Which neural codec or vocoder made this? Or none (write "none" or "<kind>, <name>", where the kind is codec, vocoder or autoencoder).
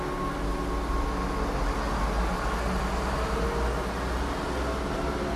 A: none